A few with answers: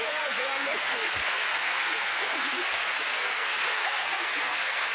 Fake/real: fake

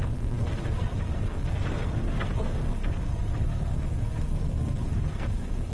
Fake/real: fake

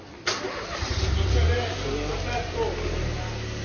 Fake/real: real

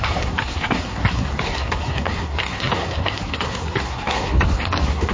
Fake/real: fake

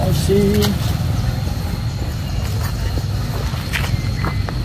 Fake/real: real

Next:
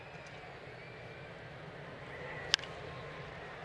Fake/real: real